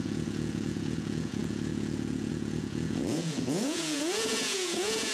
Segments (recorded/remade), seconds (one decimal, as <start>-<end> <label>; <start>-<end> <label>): 0.0-5.1 remade

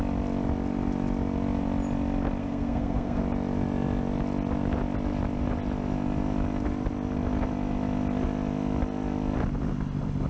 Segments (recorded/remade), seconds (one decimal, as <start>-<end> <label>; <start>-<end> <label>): 0.0-2.4 recorded; 2.4-3.2 remade; 3.2-10.3 recorded

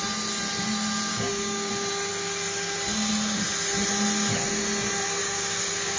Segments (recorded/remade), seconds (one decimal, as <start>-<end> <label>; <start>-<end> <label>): 0.0-1.1 recorded; 1.1-1.7 remade; 1.7-5.2 recorded; 5.2-6.0 remade

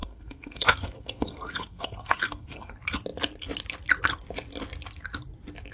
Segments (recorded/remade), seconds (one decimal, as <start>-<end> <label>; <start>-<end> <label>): 0.0-2.7 remade; 2.7-5.7 recorded

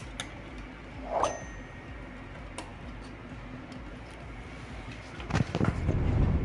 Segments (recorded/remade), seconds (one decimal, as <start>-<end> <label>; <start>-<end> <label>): 0.0-6.4 recorded

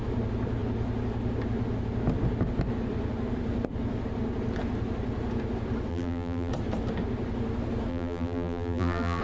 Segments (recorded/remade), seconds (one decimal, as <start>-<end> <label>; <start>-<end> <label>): 0.0-5.9 recorded; 5.9-6.5 remade; 6.5-7.9 recorded; 7.9-9.2 remade

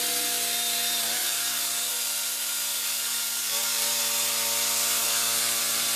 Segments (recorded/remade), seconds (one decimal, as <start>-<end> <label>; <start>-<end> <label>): 0.0-1.2 recorded; 1.2-1.9 remade; 1.9-2.7 recorded; 2.7-4.0 remade; 4.0-5.0 recorded; 5.0-5.6 remade; 5.6-6.0 recorded

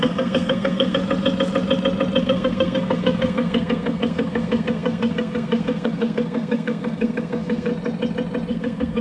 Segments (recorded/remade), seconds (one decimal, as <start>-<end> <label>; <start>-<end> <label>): 0.0-1.0 remade; 1.0-2.2 recorded; 2.2-7.7 remade; 7.7-8.5 recorded; 8.5-9.0 remade